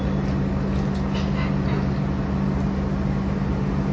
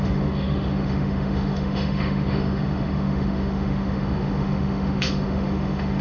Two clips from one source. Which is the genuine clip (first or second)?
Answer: first